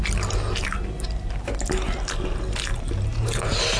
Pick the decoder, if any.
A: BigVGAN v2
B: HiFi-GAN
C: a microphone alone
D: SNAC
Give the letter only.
C